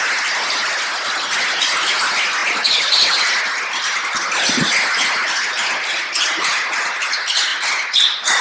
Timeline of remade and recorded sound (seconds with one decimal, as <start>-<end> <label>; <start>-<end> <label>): 0.0-8.4 recorded